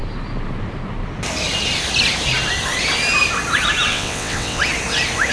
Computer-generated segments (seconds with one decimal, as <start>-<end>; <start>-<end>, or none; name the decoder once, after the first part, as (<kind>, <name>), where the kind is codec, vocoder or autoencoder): 3.9-4.6 (vocoder, WaveNeXt)